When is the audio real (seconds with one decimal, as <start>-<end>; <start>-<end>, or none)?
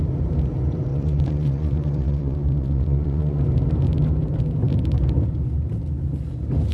0.0-0.9; 3.4-6.7